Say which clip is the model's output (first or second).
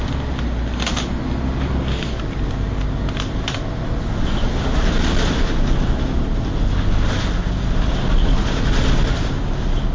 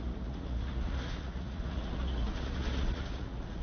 second